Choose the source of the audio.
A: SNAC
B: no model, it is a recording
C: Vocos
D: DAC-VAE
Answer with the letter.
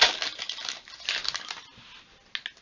B